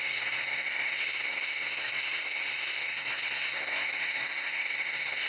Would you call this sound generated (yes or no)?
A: yes